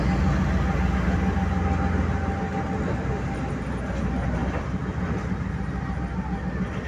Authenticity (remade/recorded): recorded